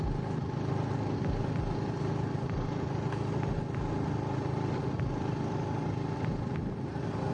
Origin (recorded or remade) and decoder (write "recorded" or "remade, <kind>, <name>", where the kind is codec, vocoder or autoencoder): recorded